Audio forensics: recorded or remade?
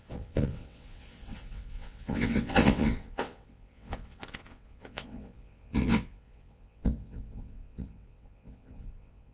remade